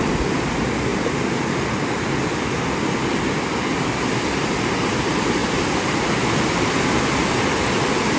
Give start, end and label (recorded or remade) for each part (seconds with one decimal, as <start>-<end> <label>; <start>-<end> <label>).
0.0-8.2 recorded